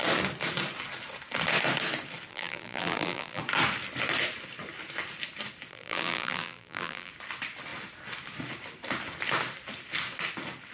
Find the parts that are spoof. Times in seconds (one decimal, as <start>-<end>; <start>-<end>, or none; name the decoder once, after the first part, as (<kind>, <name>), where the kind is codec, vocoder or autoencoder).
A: 2.3-3.4 (vocoder, BigVGAN v2); 5.7-7.1